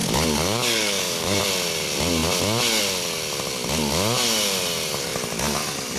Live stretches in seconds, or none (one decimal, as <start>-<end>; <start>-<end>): 1.4-6.0